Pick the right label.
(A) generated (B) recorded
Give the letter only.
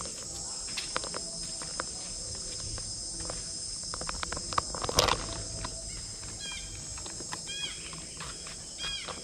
B